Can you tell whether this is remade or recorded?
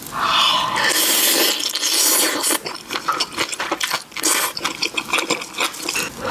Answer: recorded